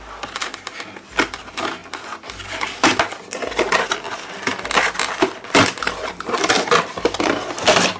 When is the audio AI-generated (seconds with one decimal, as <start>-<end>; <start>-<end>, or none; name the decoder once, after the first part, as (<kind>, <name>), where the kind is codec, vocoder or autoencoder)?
none